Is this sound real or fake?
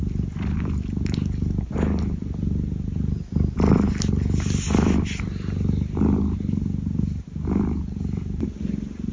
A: real